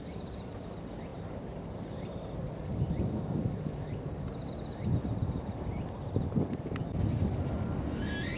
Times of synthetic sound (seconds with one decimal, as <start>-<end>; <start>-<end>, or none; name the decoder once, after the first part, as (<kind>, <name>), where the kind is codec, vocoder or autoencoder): none